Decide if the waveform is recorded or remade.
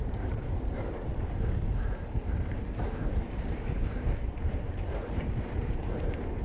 remade